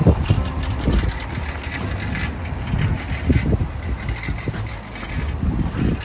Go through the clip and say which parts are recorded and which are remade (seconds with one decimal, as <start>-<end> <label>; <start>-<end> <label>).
0.0-6.0 recorded